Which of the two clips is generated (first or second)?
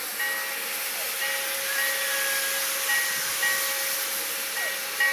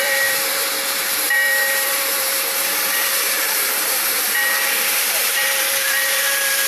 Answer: second